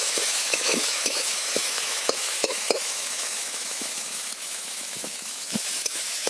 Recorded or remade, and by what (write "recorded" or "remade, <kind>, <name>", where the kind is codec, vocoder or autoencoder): remade, autoencoder, DAC-VAE